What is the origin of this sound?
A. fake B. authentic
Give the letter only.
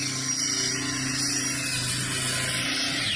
B